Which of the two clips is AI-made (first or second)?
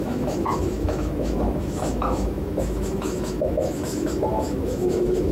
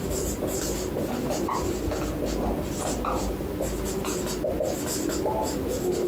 first